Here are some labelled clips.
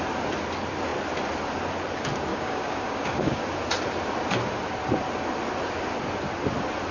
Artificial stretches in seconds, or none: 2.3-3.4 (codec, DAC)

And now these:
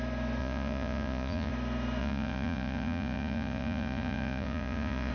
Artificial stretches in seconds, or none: 0.4-1.5 (vocoder, Vocos); 2.0-5.1

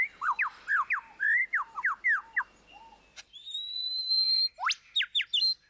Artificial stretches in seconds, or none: 3.1-4.5 (vocoder, BigVGAN v2)